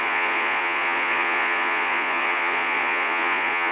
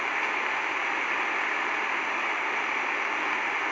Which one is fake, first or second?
first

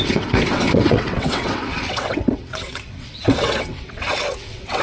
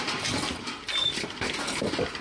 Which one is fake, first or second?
first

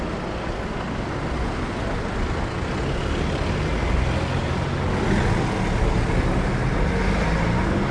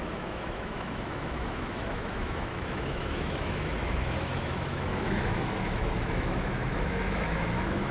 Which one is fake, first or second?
second